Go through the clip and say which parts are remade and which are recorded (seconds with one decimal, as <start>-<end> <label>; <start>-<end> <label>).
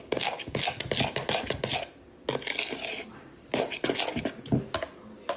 0.0-0.8 remade; 0.8-5.4 recorded